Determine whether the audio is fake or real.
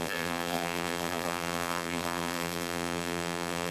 fake